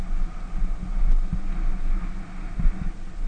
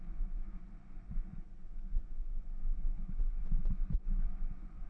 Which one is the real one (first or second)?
first